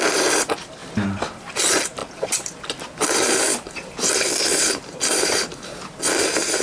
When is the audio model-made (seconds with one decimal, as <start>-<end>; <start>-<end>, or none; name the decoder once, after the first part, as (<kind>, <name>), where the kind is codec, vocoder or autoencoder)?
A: 0.8-1.6 (vocoder, BigVGAN v2); 2.0-6.0